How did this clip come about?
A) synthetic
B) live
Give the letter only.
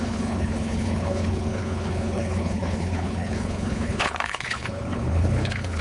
A